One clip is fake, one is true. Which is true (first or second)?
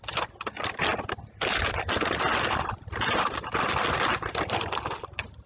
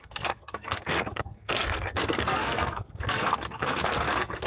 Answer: first